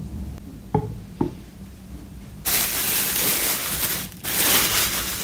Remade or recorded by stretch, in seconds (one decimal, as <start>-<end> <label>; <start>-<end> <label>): 0.0-3.1 remade; 3.1-3.6 recorded; 3.6-4.2 remade; 4.2-5.2 recorded